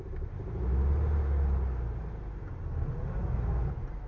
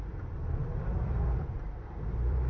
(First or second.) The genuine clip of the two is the first